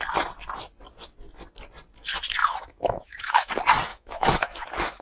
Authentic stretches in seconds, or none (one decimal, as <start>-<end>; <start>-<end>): 0.0-2.4; 3.5-3.9